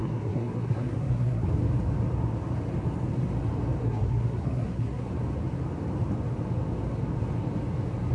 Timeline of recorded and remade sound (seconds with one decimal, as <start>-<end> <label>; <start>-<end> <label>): 0.0-1.5 remade; 1.5-3.8 recorded; 3.8-5.1 remade; 5.1-8.1 recorded